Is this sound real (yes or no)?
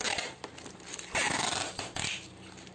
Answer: yes